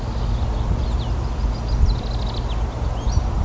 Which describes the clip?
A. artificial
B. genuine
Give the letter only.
B